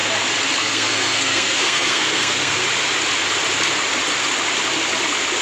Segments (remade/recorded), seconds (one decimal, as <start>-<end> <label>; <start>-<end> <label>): 0.0-0.6 recorded; 0.6-2.6 remade; 2.6-5.4 recorded